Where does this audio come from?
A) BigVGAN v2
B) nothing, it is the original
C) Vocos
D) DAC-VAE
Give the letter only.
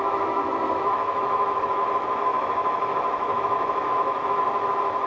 D